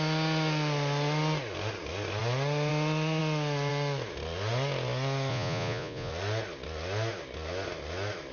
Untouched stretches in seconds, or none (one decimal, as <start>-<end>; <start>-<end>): 0.0-5.3; 6.1-8.3